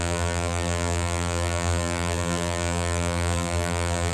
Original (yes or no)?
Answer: no